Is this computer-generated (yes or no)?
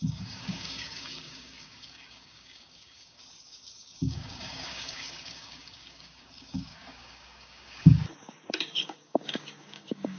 yes